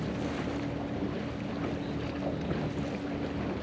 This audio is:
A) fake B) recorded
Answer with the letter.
B